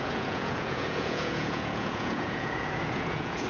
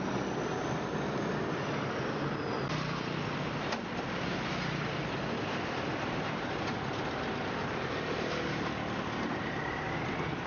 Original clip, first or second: second